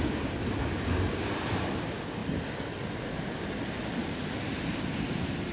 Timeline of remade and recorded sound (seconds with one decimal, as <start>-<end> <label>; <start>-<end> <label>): 0.0-5.5 recorded